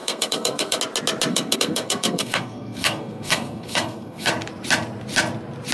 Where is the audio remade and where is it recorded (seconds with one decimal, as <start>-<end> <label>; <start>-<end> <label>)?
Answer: 0.0-0.8 remade; 0.8-1.3 recorded; 1.3-4.3 remade; 4.3-5.7 recorded